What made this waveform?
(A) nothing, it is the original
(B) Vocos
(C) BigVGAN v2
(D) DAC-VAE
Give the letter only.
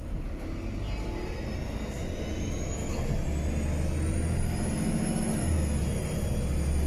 A